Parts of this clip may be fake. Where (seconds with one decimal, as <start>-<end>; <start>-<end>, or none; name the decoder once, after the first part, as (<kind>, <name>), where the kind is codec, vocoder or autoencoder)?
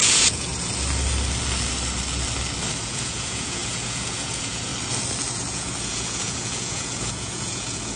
0.0-0.5 (vocoder, Vocos); 2.8-4.7; 5.5-8.0